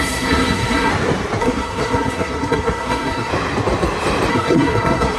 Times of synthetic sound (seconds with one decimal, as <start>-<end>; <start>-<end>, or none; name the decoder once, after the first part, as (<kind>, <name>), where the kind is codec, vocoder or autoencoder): 0.0-0.9 (codec, SNAC); 1.4-3.3; 4.3-5.2